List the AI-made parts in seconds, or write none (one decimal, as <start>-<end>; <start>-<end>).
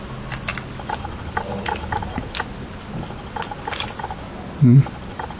none